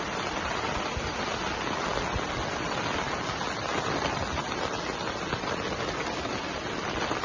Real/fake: real